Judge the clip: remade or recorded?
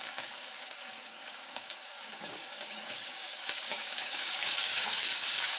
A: remade